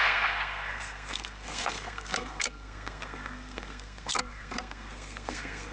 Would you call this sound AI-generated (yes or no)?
yes